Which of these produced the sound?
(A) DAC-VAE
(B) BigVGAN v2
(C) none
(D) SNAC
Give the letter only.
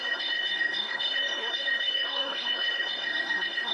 D